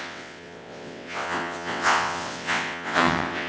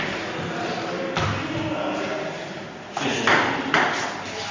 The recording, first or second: second